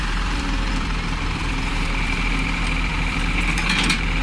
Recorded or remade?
remade